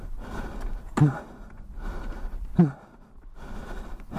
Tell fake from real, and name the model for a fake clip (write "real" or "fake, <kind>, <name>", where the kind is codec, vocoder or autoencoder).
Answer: real